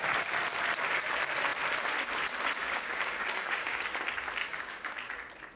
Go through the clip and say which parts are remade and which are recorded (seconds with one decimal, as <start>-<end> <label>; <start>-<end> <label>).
0.0-2.6 recorded; 2.6-3.9 remade; 3.9-4.4 recorded; 4.4-5.1 remade; 5.1-5.6 recorded